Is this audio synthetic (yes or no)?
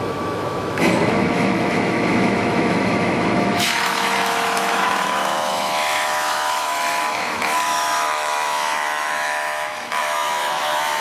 yes